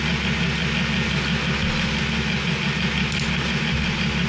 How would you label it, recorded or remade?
recorded